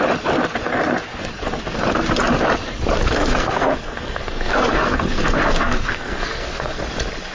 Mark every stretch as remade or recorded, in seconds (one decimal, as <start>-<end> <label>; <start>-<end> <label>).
0.0-3.2 recorded; 3.2-6.8 remade; 6.8-7.3 recorded